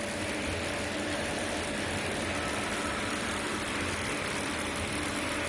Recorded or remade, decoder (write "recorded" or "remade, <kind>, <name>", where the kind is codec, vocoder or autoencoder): recorded